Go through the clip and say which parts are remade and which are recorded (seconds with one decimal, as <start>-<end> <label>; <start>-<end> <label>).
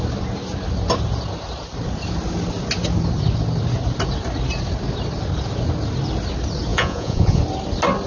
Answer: 0.0-6.7 recorded; 6.7-7.4 remade; 7.4-8.1 recorded